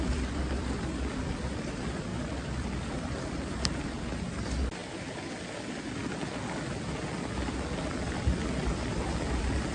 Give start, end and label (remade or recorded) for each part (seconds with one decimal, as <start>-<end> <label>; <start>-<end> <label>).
0.0-9.7 recorded